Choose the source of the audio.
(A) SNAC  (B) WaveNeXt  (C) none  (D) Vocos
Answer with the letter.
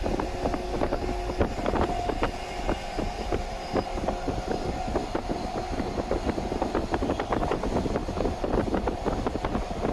C